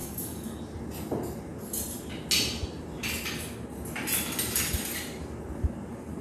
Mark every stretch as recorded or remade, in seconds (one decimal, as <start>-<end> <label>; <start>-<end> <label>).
0.0-0.6 remade; 0.6-6.2 recorded